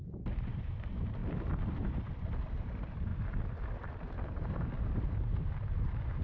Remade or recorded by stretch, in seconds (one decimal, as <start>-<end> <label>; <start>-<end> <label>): 0.0-1.2 remade; 1.2-1.8 recorded; 1.8-3.1 remade; 3.1-4.3 recorded; 4.3-6.2 remade